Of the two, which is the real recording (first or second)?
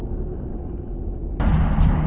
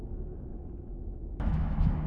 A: first